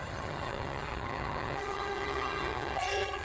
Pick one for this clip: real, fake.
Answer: fake